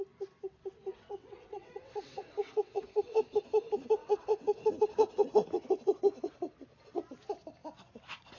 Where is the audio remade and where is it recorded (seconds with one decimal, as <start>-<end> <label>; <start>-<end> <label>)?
0.0-0.9 recorded; 0.9-3.2 remade; 3.2-4.0 recorded; 4.0-4.7 remade; 4.7-8.4 recorded